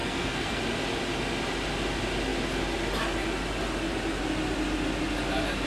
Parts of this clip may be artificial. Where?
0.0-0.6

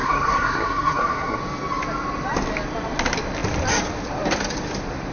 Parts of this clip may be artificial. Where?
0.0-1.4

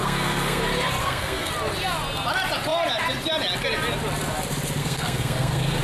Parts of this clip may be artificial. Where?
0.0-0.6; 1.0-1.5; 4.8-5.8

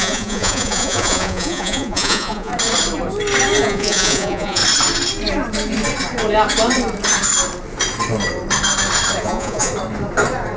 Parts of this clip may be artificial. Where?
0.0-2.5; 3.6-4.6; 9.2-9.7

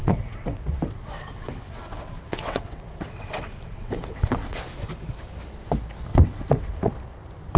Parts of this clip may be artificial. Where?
0.0-4.6; 6.1-6.9

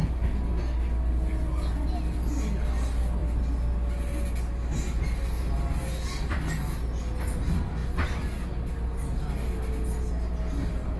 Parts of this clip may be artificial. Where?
none